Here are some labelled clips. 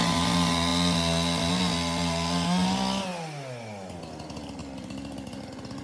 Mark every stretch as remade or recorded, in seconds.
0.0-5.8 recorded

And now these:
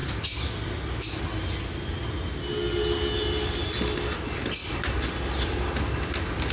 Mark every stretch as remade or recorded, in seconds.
0.0-6.5 recorded

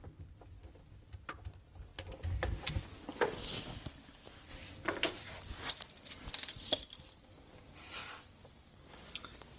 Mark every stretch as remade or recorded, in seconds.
0.0-4.5 recorded; 4.5-5.7 remade; 5.7-8.0 recorded; 8.0-8.9 remade; 8.9-9.6 recorded

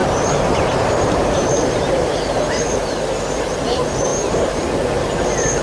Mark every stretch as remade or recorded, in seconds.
0.0-3.4 remade; 3.4-4.1 recorded; 4.1-4.8 remade; 4.8-5.6 recorded

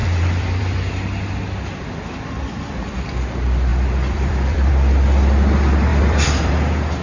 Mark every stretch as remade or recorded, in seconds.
0.0-0.9 remade; 0.9-3.7 recorded; 3.7-4.7 remade; 4.7-5.9 recorded; 5.9-6.5 remade; 6.5-7.0 recorded